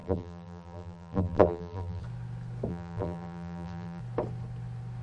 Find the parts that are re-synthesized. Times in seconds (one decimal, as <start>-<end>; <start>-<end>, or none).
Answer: 0.0-2.0; 2.7-4.0